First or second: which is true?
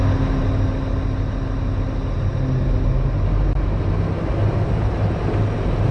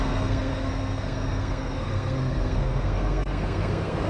first